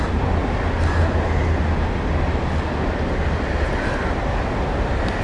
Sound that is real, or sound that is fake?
real